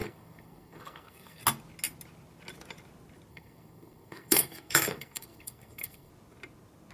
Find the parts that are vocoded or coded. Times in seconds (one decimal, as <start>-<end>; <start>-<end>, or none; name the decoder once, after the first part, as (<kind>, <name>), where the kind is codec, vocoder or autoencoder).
0.0-1.4 (codec, SNAC); 3.3-6.1